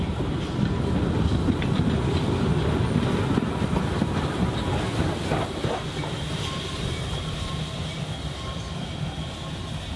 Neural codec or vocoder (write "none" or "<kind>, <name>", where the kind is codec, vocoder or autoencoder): none